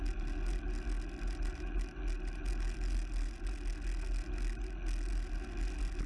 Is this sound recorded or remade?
recorded